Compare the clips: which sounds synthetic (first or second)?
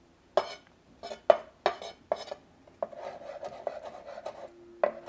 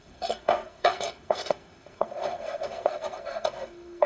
second